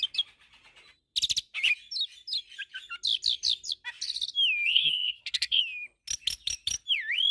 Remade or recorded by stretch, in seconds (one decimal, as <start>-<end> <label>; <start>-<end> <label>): 0.0-4.7 recorded; 4.7-5.6 remade; 5.6-7.3 recorded